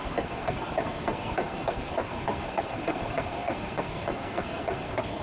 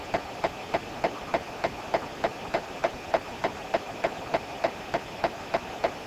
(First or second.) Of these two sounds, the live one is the second